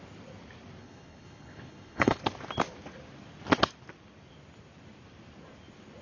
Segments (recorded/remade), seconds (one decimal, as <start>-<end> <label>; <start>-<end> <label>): 0.0-0.8 recorded; 0.8-2.2 remade; 2.2-6.0 recorded